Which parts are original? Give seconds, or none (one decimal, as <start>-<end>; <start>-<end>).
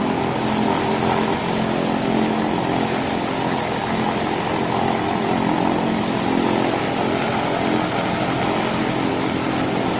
0.0-3.8; 7.3-10.0